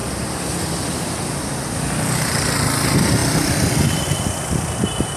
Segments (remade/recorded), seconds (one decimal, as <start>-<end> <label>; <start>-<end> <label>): 0.0-1.9 remade; 1.9-3.2 recorded; 3.2-4.4 remade; 4.4-5.2 recorded